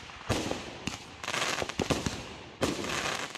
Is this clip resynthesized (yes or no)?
no